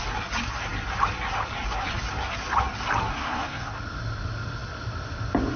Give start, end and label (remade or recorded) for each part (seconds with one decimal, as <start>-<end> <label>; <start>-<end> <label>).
0.0-3.1 recorded; 3.1-3.7 remade; 3.7-5.6 recorded